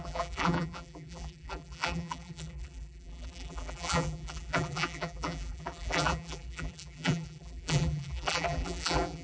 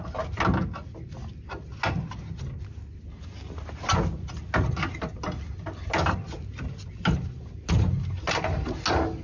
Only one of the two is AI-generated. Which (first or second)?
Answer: first